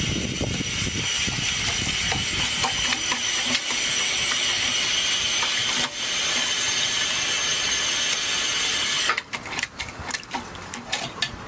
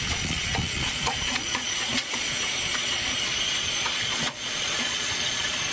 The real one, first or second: first